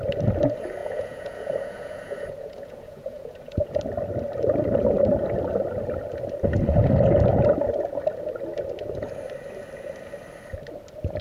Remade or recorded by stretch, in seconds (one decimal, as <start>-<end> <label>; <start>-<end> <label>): 0.0-0.8 recorded; 0.8-3.8 remade; 3.8-11.2 recorded